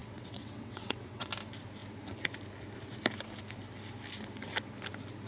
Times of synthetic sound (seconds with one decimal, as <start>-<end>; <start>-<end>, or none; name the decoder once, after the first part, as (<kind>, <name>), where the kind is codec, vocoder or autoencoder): 0.0-1.3 (vocoder, WaveNeXt)